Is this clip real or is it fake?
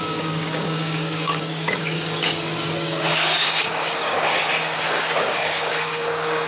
fake